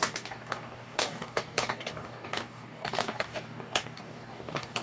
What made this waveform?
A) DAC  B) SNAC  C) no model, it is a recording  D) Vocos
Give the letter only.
A